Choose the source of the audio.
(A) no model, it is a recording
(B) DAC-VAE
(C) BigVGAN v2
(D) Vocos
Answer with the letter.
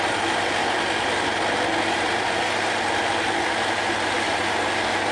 A